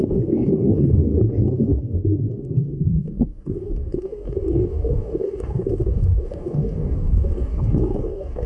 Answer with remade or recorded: remade